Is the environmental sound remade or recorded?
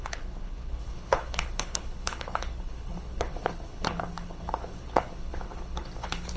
remade